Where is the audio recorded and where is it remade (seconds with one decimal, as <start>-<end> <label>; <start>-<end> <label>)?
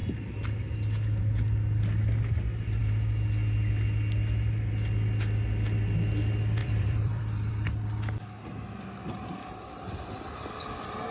0.0-6.6 recorded; 6.6-7.5 remade; 7.5-11.1 recorded